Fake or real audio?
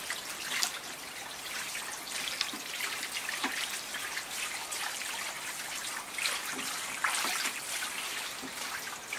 real